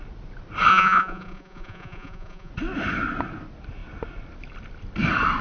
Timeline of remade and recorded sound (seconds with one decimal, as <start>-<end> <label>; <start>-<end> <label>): 0.0-0.7 recorded; 0.7-2.5 remade; 2.5-5.4 recorded

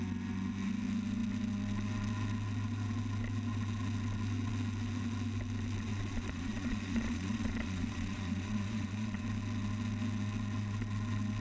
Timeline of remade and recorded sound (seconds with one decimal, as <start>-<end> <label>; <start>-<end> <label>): 0.0-5.9 recorded; 5.9-9.2 remade; 9.2-11.4 recorded

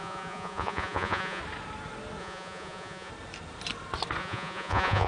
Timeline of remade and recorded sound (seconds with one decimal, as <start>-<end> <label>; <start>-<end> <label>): 0.0-1.4 remade; 1.4-2.2 recorded; 2.2-3.1 remade; 3.1-4.2 recorded; 4.2-5.1 remade

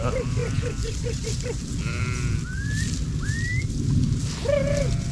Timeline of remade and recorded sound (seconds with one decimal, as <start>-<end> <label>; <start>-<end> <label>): 0.0-5.1 recorded

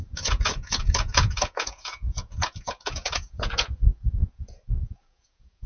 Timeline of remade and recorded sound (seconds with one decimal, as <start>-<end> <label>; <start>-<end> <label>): 0.0-5.7 remade

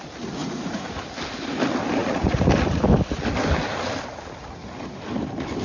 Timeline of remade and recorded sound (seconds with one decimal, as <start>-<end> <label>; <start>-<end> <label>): 0.0-0.4 recorded; 0.4-1.0 remade; 1.0-2.0 recorded; 2.0-2.5 remade; 2.5-5.6 recorded

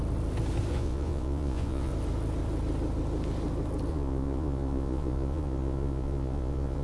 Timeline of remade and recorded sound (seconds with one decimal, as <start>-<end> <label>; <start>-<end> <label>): 0.0-0.7 recorded; 0.7-1.9 remade; 1.9-3.9 recorded; 3.9-6.8 remade